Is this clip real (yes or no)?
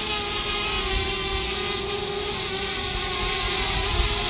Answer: yes